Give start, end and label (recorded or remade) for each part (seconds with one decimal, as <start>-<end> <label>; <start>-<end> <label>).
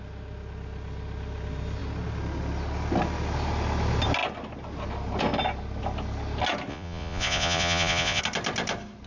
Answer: 0.0-6.7 recorded; 6.7-8.2 remade; 8.2-9.1 recorded